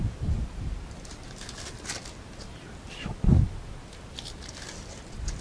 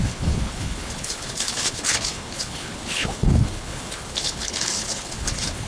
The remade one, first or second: second